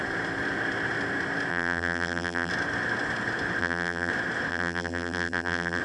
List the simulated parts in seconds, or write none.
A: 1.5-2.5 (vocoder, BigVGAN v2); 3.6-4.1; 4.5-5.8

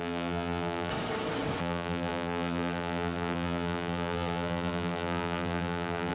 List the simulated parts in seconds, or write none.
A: 0.0-0.9 (vocoder, BigVGAN v2); 1.6-6.1

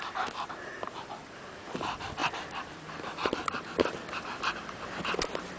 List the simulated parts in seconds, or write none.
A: 0.0-5.6 (vocoder, BigVGAN v2)